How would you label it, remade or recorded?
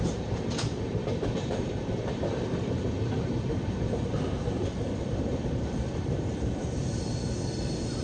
remade